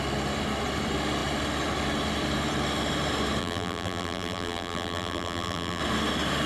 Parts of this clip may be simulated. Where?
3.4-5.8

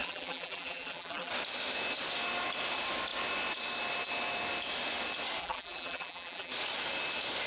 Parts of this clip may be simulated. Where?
0.0-1.3; 5.4-6.5

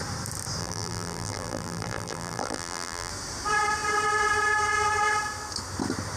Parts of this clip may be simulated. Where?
0.6-3.1

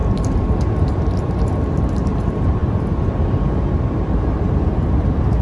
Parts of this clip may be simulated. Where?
0.0-5.4

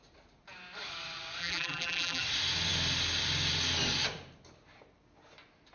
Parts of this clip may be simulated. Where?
1.4-2.2

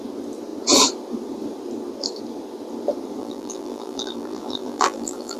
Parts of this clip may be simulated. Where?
3.2-5.4

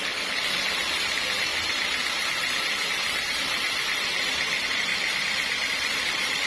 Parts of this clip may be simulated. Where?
0.0-4.9; 5.7-6.5

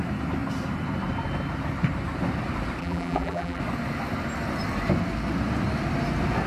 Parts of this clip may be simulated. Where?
2.8-3.6